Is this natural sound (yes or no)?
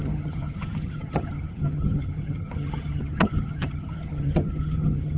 no